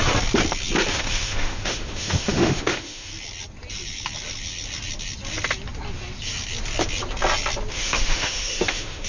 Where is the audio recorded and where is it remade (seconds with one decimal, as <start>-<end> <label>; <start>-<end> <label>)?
0.0-0.9 recorded; 0.9-3.1 remade; 3.1-7.7 recorded; 7.7-9.1 remade

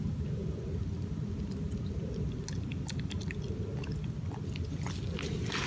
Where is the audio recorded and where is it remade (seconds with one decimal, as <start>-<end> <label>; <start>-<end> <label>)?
0.0-5.7 recorded

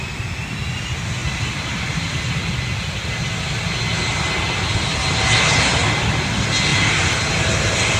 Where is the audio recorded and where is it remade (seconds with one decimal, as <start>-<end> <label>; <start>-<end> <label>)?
0.0-8.0 recorded

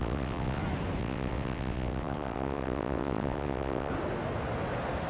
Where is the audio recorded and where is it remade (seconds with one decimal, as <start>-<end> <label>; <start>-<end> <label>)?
0.0-0.6 remade; 0.6-1.0 recorded; 1.0-3.9 remade; 3.9-5.1 recorded